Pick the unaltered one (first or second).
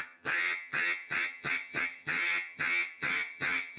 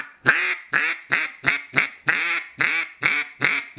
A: second